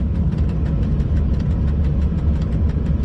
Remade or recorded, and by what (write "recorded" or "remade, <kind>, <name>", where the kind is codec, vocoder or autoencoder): recorded